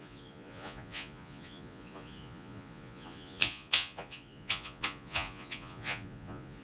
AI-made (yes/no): yes